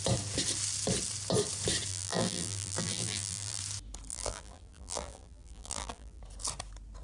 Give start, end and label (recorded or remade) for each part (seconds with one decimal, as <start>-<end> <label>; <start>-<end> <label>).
0.0-1.9 recorded; 1.9-3.6 remade; 3.6-4.1 recorded; 4.1-6.2 remade; 6.2-7.0 recorded

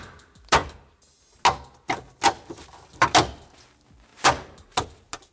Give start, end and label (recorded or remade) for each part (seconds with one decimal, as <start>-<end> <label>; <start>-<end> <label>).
0.0-5.3 recorded

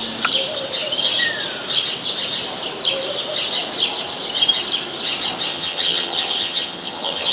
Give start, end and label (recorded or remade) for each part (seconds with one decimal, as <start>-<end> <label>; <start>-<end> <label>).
0.0-5.5 recorded; 5.5-7.3 remade

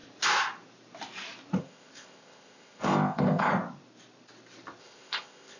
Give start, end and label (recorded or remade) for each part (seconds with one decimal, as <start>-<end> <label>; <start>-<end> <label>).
0.0-1.6 recorded; 1.6-3.5 remade; 3.5-4.8 recorded; 4.8-5.6 remade

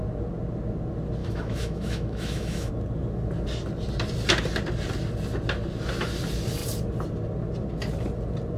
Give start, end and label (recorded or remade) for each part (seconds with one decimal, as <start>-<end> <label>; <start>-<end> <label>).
0.0-1.2 recorded; 1.2-2.7 remade; 2.7-8.6 recorded